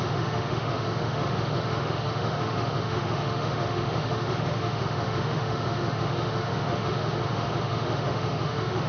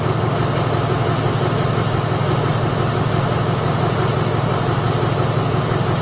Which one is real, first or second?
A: second